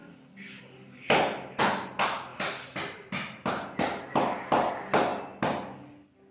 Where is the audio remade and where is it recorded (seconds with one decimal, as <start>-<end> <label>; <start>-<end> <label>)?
0.0-6.3 recorded